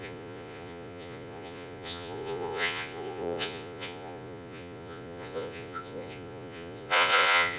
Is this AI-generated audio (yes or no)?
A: yes